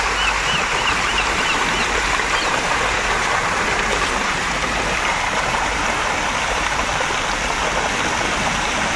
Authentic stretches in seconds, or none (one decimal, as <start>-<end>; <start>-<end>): 0.0-2.4; 6.9-9.0

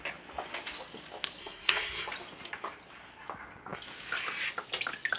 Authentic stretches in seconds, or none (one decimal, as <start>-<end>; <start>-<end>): 0.0-1.4; 2.1-5.2

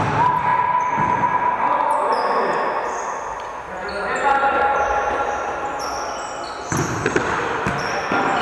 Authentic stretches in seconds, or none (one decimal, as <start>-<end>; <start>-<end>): 0.0-8.4

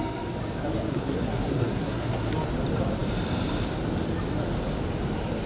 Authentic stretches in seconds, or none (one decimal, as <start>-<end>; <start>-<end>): 0.0-0.9; 2.3-5.5

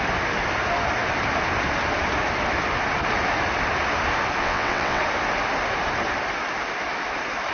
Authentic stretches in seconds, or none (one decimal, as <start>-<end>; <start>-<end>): 0.0-4.4; 5.0-7.5